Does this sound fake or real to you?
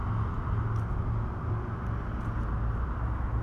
real